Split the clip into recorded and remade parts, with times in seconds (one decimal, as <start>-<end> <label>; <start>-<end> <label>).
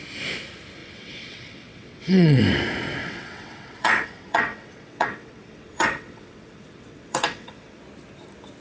0.0-0.8 recorded; 0.8-2.4 remade; 2.4-3.0 recorded; 3.0-7.8 remade; 7.8-8.6 recorded